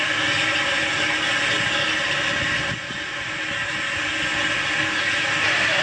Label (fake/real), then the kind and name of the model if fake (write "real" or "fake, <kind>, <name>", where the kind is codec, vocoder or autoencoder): real